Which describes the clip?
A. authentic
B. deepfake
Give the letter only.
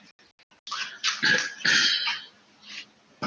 A